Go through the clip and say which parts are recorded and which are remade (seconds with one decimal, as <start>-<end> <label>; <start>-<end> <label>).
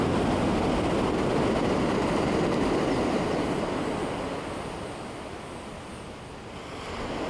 0.0-7.3 recorded